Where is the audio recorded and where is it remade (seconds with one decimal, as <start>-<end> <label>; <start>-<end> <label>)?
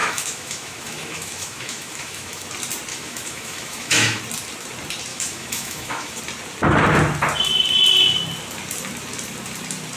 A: 0.0-2.5 remade; 2.5-2.9 recorded; 2.9-4.2 remade; 4.2-5.1 recorded; 5.1-6.2 remade; 6.2-10.0 recorded